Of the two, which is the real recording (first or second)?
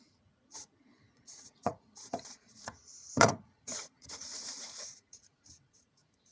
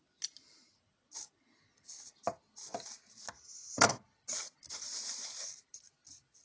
second